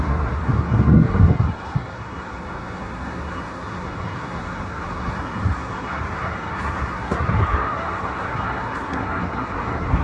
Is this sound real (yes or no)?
no